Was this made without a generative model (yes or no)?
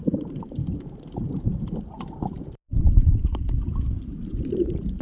no